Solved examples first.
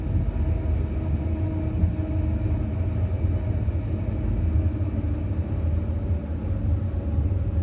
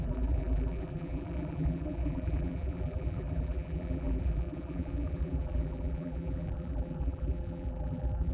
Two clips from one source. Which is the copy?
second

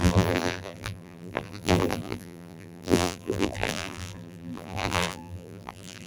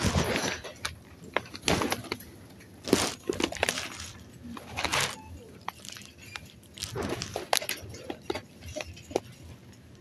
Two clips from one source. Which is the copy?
first